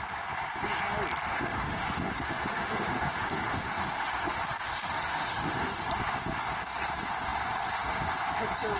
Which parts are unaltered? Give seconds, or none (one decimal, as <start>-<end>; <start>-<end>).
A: 0.0-1.3; 5.9-8.8